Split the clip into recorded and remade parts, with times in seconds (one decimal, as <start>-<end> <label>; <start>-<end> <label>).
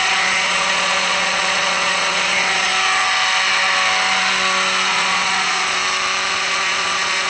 0.0-2.7 remade; 2.7-4.9 recorded; 4.9-5.8 remade; 5.8-6.3 recorded; 6.3-7.3 remade